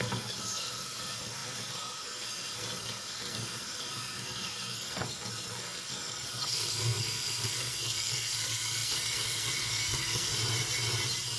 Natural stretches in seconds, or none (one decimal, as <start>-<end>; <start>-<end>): 10.3-11.4